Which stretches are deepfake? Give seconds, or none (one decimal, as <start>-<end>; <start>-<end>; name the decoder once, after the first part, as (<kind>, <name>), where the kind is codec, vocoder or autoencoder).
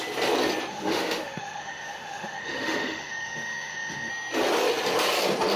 0.7-4.1 (autoencoder, DAC-VAE)